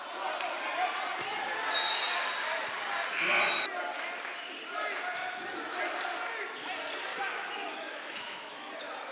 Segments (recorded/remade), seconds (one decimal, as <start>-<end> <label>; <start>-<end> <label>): 0.0-7.1 recorded; 7.1-8.7 remade; 8.7-9.1 recorded